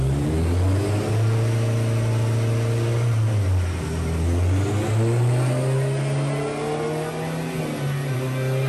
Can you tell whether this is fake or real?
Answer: real